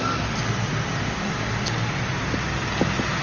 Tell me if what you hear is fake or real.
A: real